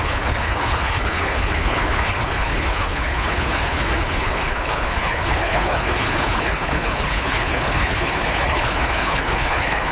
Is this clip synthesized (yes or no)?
yes